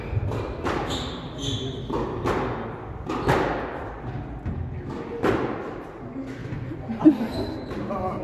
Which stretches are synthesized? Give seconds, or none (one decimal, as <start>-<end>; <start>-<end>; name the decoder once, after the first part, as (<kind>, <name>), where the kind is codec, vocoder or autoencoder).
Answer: none